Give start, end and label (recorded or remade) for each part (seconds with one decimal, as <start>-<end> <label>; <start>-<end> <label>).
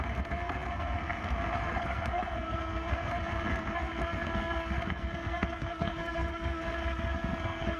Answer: 0.0-7.8 remade